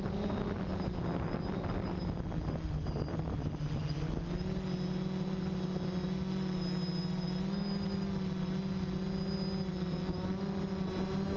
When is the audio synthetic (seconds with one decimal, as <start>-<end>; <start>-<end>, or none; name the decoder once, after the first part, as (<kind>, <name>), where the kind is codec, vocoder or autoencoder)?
none